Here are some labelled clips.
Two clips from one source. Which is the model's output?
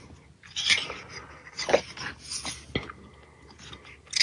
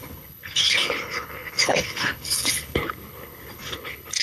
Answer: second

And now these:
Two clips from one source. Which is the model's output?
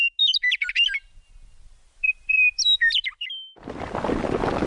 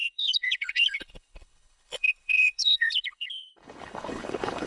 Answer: second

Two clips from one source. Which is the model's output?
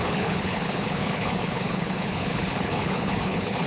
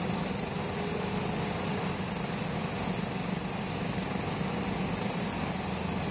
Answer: first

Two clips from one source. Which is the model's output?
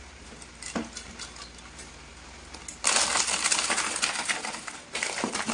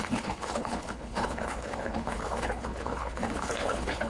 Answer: second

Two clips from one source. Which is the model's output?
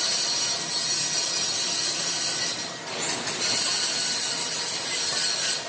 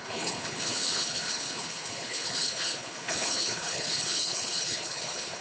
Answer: second